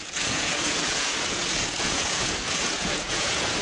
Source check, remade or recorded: remade